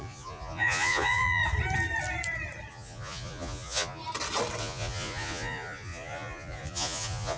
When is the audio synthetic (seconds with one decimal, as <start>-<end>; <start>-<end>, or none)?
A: 0.0-1.4; 2.7-4.0; 4.6-7.4